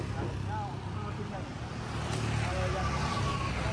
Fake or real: real